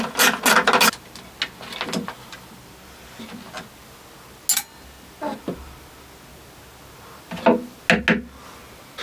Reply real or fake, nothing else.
real